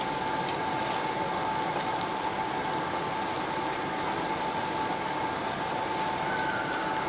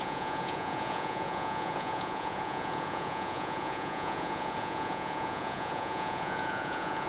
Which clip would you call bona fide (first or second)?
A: first